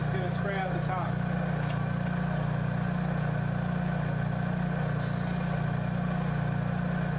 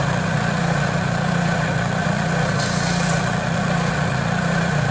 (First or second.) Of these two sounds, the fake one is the second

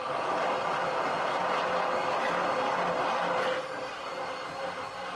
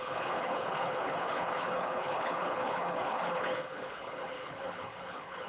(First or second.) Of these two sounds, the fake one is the second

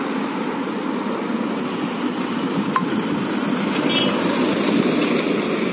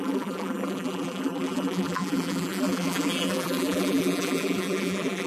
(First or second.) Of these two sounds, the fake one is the second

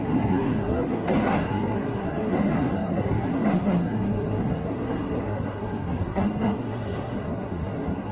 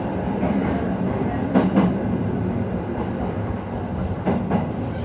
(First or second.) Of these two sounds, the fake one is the first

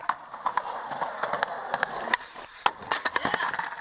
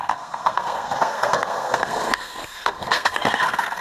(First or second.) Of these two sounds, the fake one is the second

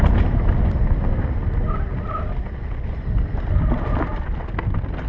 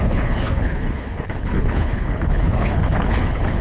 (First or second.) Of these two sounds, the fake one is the second